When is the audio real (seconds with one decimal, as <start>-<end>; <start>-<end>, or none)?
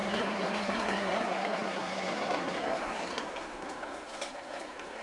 none